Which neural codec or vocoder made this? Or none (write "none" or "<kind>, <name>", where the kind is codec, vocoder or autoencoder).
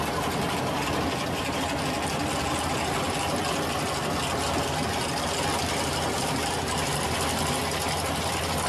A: none